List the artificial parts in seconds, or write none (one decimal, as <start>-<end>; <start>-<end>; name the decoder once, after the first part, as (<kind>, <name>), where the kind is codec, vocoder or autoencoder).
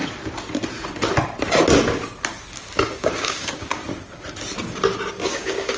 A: 3.0-3.8 (codec, DAC); 5.1-5.8